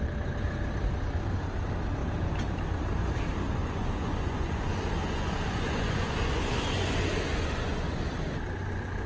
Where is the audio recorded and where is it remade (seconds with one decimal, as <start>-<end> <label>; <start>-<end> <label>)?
0.0-3.6 recorded; 3.6-8.0 remade; 8.0-9.1 recorded

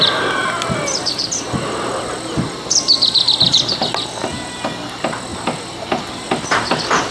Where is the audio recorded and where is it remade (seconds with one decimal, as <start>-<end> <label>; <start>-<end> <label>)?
0.0-7.1 recorded

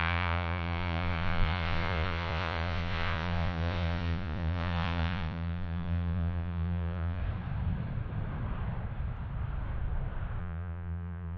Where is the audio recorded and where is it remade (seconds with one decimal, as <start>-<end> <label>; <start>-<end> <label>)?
0.0-7.2 remade; 7.2-10.4 recorded; 10.4-11.4 remade

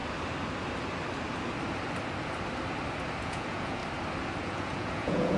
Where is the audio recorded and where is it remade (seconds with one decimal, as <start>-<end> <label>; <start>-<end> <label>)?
0.0-3.2 recorded; 3.2-3.8 remade; 3.8-4.4 recorded; 4.4-5.4 remade

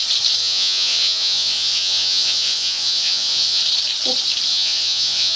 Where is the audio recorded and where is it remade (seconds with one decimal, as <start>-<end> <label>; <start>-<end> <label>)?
0.0-0.4 recorded; 0.4-3.6 remade; 3.6-4.5 recorded; 4.5-5.4 remade